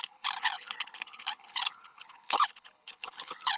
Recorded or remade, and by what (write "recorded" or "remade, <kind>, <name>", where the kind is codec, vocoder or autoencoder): remade, codec, HILCodec